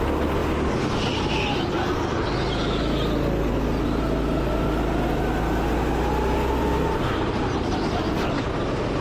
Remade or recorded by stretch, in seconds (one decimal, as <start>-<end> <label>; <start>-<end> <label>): 0.0-9.0 recorded